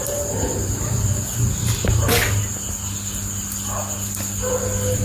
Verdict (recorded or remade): recorded